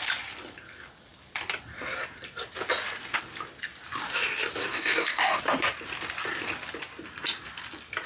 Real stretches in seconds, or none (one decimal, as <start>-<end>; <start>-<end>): 0.0-4.6; 5.4-8.1